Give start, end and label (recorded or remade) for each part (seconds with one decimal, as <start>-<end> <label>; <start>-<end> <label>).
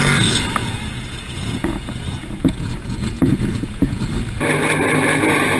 0.0-0.6 recorded; 0.6-4.0 remade; 4.0-5.6 recorded